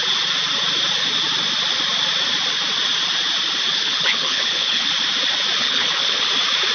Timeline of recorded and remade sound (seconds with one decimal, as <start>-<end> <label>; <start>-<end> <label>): 0.0-3.7 recorded; 3.7-4.9 remade; 4.9-5.6 recorded; 5.6-6.3 remade; 6.3-6.7 recorded